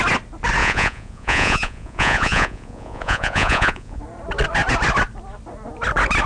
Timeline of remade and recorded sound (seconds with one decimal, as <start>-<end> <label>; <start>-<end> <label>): 0.0-0.6 recorded; 0.6-4.0 remade; 4.0-6.3 recorded